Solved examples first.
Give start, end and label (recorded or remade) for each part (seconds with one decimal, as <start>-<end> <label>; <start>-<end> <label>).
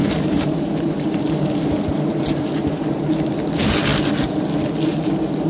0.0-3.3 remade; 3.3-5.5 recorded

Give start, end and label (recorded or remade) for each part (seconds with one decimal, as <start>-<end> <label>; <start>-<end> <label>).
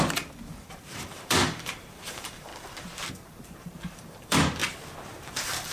0.0-2.5 remade; 2.5-3.1 recorded; 3.1-4.6 remade; 4.6-5.1 recorded; 5.1-5.7 remade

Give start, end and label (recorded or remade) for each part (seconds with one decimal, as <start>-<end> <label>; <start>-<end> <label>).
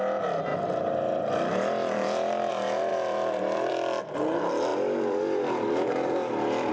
0.0-0.5 recorded; 0.5-2.5 remade; 2.5-2.9 recorded; 2.9-3.7 remade; 3.7-4.7 recorded; 4.7-6.7 remade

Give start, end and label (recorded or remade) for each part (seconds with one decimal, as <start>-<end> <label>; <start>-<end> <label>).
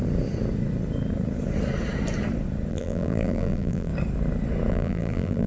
0.0-2.7 recorded; 2.7-3.9 remade; 3.9-4.7 recorded; 4.7-5.5 remade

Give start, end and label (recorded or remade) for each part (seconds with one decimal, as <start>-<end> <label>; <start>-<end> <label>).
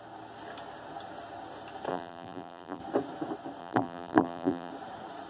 0.0-1.9 recorded; 1.9-2.8 remade; 2.8-3.6 recorded; 3.6-4.7 remade; 4.7-5.3 recorded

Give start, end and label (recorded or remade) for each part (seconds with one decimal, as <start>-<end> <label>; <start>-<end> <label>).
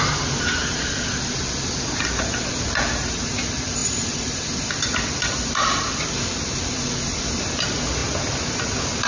0.0-3.8 recorded; 3.8-7.5 remade; 7.5-9.1 recorded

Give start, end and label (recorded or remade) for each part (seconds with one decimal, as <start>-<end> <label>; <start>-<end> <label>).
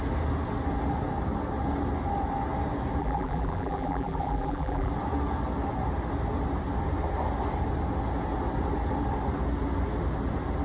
0.0-3.0 recorded; 3.0-4.9 remade; 4.9-10.6 recorded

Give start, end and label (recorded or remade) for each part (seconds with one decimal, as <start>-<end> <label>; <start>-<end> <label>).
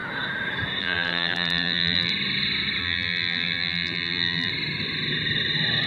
0.0-0.8 recorded; 0.8-2.1 remade; 2.1-2.8 recorded; 2.8-4.5 remade; 4.5-5.9 recorded